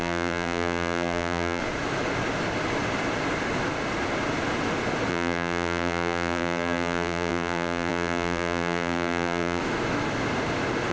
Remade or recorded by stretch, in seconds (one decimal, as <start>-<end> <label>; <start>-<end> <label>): 0.0-1.6 remade; 1.6-5.1 recorded; 5.1-9.6 remade; 9.6-10.9 recorded